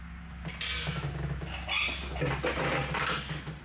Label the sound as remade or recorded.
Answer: recorded